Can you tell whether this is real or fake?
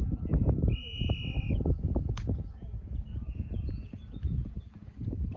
fake